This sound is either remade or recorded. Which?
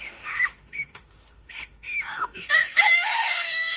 remade